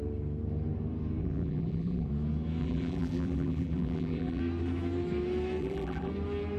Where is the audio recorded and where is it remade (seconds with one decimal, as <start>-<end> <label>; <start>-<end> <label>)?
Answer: 0.0-1.2 recorded; 1.2-2.1 remade; 2.1-2.6 recorded; 2.6-4.4 remade; 4.4-5.6 recorded; 5.6-6.1 remade; 6.1-6.6 recorded